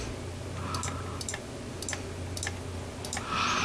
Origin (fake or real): real